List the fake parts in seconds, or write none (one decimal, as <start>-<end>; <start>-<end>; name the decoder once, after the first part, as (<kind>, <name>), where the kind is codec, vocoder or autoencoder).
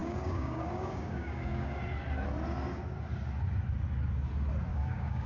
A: 0.0-1.8 (codec, DAC); 4.7-5.3